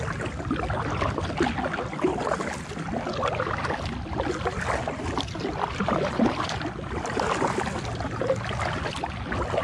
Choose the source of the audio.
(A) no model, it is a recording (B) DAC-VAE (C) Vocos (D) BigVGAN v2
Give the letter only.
A